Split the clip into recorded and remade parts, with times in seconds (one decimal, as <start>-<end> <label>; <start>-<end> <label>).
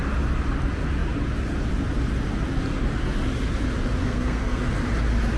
0.0-4.0 recorded; 4.0-4.6 remade; 4.6-5.4 recorded